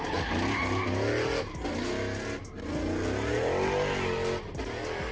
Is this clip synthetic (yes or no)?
no